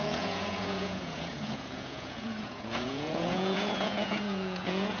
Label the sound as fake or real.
fake